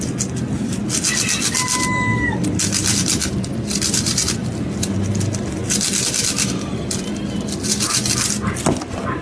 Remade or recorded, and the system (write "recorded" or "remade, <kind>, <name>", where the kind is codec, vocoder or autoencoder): recorded